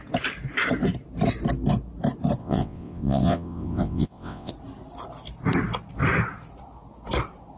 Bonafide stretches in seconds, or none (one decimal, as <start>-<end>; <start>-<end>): 0.0-2.4; 4.5-7.6